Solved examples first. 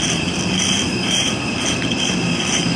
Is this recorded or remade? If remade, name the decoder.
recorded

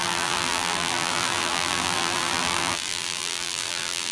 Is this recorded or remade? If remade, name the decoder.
remade, vocoder, BigVGAN v2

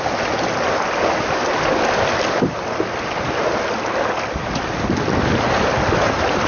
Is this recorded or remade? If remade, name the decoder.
recorded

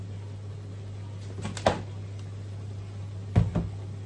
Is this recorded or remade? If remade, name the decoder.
recorded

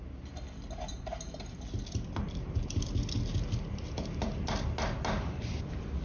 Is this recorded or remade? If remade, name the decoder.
recorded